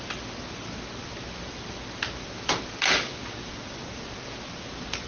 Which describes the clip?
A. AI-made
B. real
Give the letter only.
B